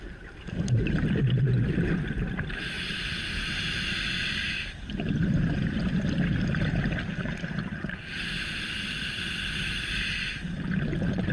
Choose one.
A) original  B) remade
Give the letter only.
A